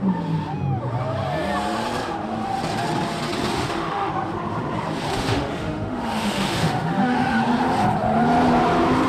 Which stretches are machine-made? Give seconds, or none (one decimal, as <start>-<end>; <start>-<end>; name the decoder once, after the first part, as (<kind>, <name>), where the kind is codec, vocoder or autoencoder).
3.5-4.1 (autoencoder, DAC-VAE); 5.1-7.4

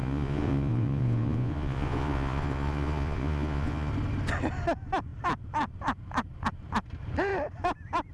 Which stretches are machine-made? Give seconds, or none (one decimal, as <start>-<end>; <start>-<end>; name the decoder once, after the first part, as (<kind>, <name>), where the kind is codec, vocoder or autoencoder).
0.0-3.9 (vocoder, Vocos)